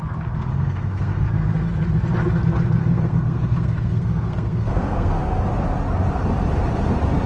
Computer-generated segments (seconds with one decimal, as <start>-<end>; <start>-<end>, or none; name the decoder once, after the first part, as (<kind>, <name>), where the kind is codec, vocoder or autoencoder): 0.5-1.3 (codec, SNAC); 2.8-5.4